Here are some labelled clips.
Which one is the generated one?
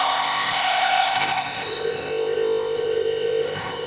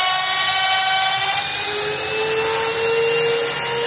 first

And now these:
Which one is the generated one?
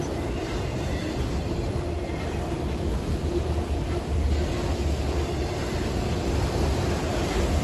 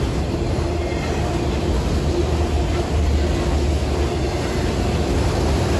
first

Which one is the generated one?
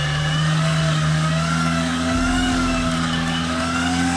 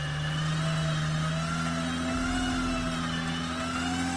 first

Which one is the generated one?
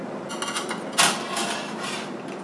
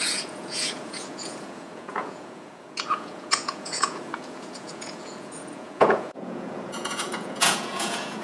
second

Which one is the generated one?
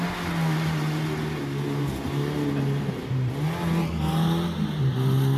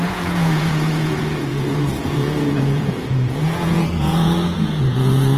second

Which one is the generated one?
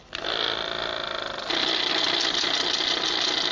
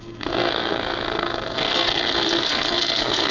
second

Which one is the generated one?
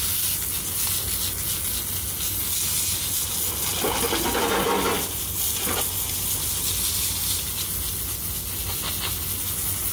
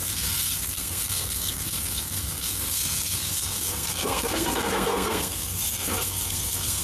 second